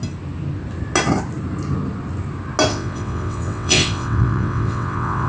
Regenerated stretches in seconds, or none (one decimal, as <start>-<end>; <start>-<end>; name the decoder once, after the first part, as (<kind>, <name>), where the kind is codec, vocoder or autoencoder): 2.7-5.3 (vocoder, WaveNeXt)